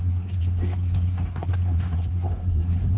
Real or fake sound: fake